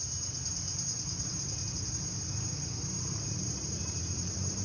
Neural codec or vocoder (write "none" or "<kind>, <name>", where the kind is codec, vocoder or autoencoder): none